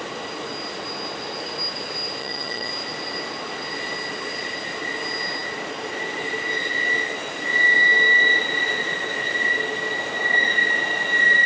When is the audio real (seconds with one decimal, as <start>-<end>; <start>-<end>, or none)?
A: 0.0-2.2; 2.7-11.5